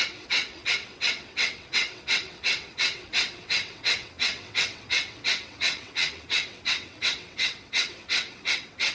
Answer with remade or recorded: remade